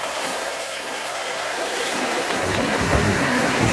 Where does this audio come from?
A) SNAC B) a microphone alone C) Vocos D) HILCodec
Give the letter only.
A